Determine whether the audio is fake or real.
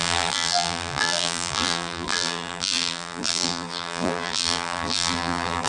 fake